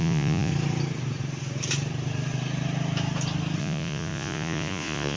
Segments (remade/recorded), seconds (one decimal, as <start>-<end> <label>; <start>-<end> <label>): 0.0-0.5 remade; 0.5-3.6 recorded; 3.6-5.2 remade